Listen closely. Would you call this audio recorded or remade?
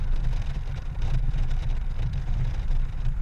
remade